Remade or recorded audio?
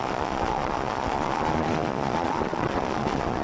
remade